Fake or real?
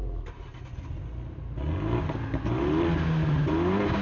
real